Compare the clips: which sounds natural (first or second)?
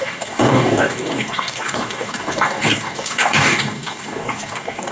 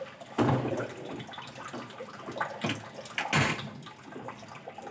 second